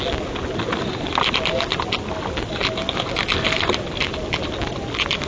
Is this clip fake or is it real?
real